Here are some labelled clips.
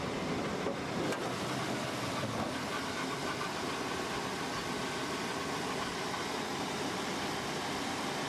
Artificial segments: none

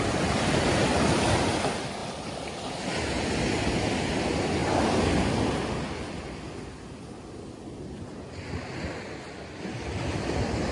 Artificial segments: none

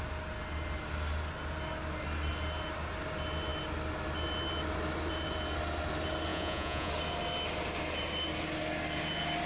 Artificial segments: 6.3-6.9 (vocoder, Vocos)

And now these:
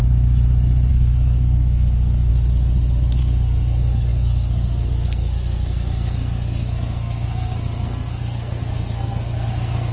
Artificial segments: 0.9-2.3 (codec, SNAC); 3.2-9.9

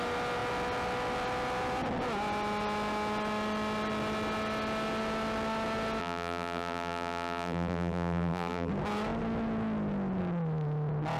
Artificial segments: 6.0-8.7 (vocoder, BigVGAN v2)